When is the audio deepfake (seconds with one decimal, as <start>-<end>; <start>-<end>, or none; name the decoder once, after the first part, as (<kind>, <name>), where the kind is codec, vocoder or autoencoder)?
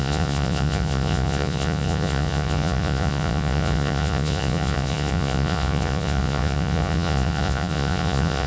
0.0-8.5 (vocoder, Vocos)